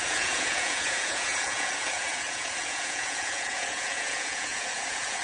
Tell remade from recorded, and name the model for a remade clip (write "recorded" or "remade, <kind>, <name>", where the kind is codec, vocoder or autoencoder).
remade, vocoder, Vocos